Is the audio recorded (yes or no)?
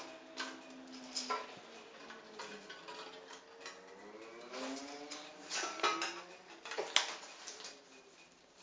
yes